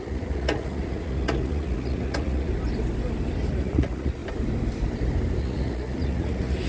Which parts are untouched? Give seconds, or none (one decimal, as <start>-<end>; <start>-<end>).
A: 2.5-3.6; 4.2-5.4